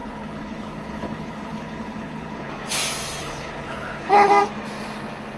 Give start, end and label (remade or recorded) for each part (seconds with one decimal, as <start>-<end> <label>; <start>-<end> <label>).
0.0-2.5 remade; 2.5-3.2 recorded; 3.2-4.3 remade; 4.3-5.4 recorded